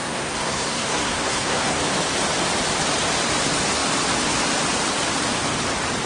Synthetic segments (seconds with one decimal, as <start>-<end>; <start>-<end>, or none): 0.0-1.8